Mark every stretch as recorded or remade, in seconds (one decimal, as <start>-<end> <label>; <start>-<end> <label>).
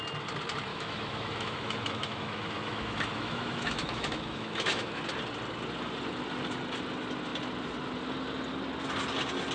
0.0-0.7 recorded; 0.7-5.0 remade; 5.0-9.5 recorded